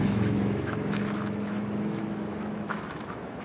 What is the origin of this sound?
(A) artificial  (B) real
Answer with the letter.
A